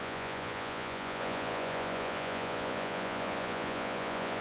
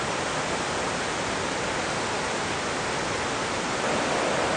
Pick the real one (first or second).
second